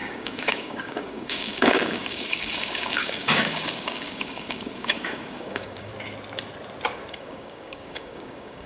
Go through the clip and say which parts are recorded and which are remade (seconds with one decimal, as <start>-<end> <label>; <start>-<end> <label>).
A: 0.0-5.9 remade; 5.9-7.1 recorded; 7.1-8.7 remade